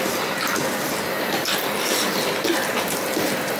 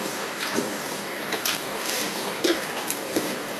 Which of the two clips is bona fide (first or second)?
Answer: first